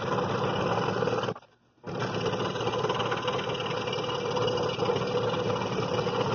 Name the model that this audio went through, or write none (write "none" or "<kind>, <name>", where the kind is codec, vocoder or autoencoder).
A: none